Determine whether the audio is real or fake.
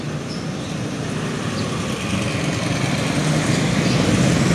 fake